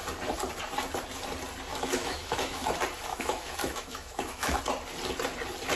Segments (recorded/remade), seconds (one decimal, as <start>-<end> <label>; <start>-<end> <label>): 0.0-1.7 recorded; 1.7-2.7 remade; 2.7-3.1 recorded; 3.1-4.6 remade; 4.6-5.8 recorded